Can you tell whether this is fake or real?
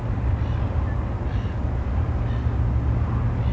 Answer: real